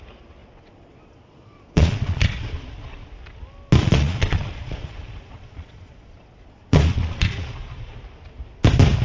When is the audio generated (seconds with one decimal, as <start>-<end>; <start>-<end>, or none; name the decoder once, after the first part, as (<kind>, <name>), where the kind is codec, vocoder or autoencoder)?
0.4-3.1 (vocoder, Vocos); 3.8-8.0